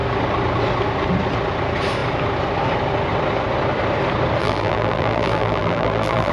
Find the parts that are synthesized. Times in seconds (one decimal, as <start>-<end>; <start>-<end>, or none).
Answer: 4.4-6.3